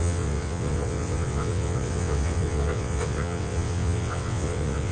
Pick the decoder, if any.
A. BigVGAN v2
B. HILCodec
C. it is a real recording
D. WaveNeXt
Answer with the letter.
D